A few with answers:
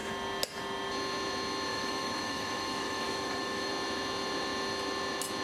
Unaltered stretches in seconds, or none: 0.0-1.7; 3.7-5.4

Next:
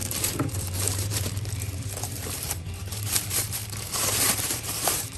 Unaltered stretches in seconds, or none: none

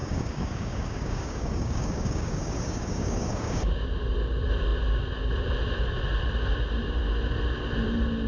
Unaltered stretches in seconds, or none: 3.7-8.3

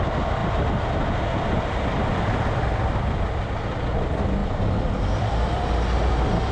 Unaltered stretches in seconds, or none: 0.0-4.4